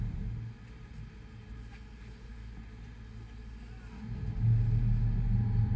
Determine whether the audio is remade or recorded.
recorded